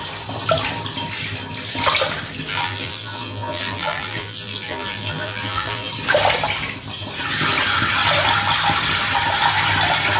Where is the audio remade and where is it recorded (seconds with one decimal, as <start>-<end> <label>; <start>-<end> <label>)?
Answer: 0.0-2.5 recorded; 2.5-5.9 remade; 5.9-10.2 recorded